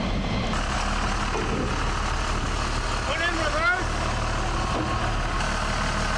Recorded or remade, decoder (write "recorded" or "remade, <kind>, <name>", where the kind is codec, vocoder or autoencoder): recorded